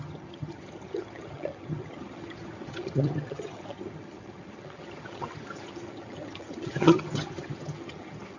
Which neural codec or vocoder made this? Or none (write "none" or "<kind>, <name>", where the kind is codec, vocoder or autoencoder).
vocoder, HiFi-GAN